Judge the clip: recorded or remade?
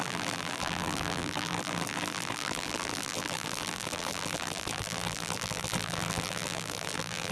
remade